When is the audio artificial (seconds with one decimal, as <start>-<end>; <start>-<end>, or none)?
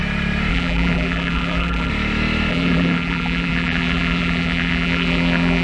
0.5-1.9; 2.5-5.6